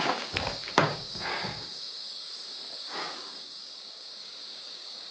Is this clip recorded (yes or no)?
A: no